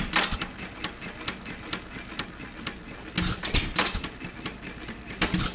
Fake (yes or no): no